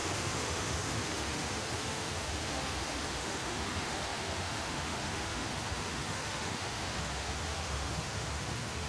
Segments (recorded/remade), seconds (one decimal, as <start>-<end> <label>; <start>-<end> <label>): 0.0-8.9 remade